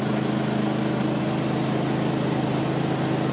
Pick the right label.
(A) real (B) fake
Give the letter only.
A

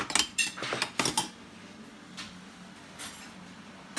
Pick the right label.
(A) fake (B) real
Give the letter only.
B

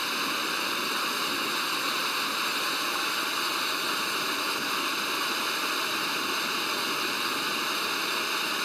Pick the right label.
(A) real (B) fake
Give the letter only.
A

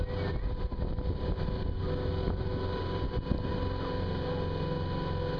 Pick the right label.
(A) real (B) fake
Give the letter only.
A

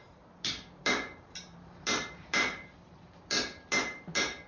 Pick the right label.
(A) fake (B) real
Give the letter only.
A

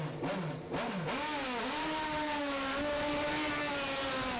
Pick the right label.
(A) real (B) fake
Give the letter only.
A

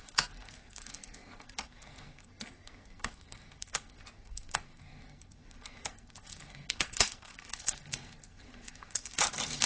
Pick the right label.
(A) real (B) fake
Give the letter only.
B